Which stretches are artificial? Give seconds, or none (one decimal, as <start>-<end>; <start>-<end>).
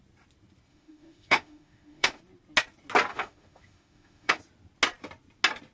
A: 0.7-2.2; 3.1-4.4